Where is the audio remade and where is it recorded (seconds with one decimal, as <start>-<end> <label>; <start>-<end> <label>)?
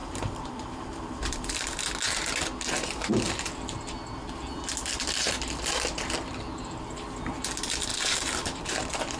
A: 0.0-1.8 remade; 1.8-7.9 recorded; 7.9-8.6 remade; 8.6-9.2 recorded